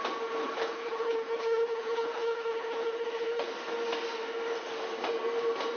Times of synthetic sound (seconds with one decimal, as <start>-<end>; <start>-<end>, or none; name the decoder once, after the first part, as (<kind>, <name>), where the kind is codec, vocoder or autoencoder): 0.4-3.5 (codec, HILCodec)